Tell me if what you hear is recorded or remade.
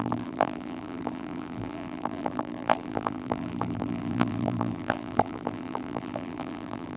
remade